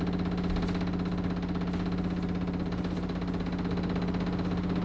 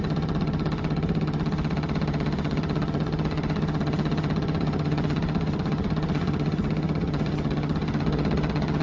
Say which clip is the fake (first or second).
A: second